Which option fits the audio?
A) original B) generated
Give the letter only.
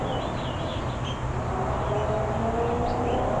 A